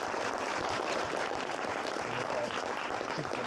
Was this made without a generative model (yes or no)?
no